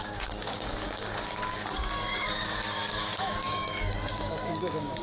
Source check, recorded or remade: remade